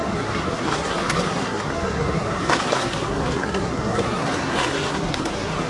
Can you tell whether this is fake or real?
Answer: fake